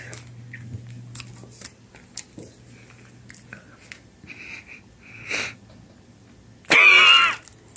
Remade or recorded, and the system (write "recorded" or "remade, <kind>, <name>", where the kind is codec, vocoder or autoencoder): recorded